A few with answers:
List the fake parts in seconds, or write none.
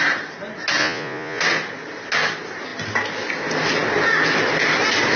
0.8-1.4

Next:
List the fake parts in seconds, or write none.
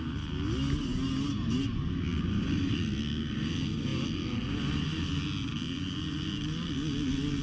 none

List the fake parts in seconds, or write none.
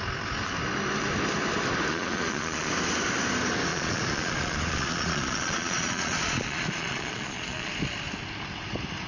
1.9-2.7; 3.7-7.7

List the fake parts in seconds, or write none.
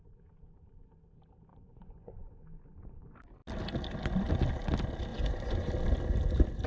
1.5-2.4; 5.1-5.7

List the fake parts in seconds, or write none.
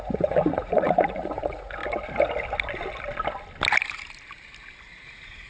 0.0-1.8; 4.9-5.5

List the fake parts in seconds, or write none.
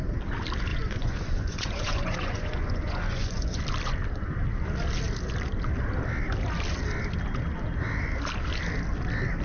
0.7-3.6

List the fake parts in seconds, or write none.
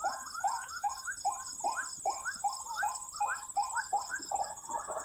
0.0-0.9; 3.8-5.0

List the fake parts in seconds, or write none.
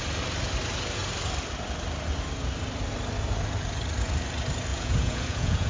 4.7-5.7